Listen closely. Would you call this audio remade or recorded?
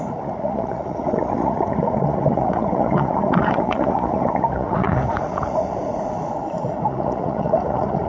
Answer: remade